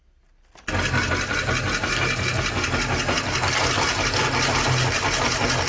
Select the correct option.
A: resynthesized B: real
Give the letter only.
B